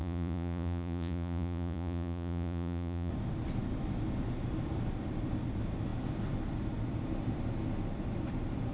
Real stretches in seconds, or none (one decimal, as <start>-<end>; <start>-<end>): 3.1-8.7